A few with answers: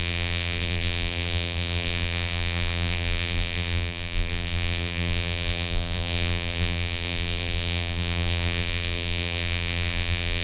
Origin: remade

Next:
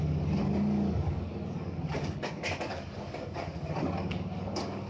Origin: remade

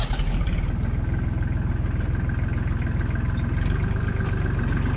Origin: recorded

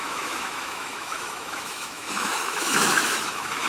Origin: remade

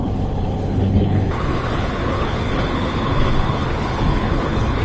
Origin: remade